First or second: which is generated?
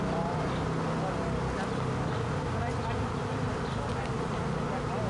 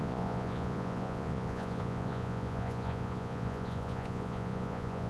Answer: second